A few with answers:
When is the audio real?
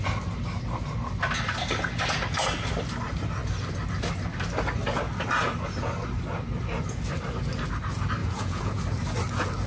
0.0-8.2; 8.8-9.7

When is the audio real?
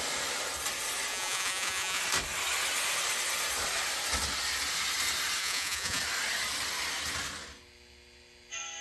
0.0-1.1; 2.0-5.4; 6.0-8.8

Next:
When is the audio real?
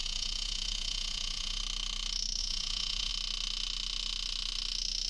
1.6-2.4; 3.1-5.1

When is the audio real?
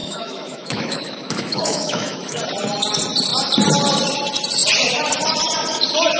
2.4-6.2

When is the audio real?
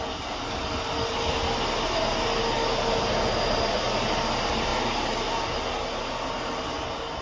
0.0-7.2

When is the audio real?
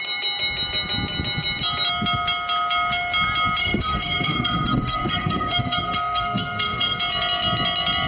0.0-3.6; 7.0-8.1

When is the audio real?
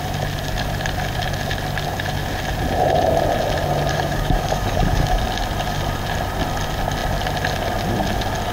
0.0-3.9; 5.2-8.5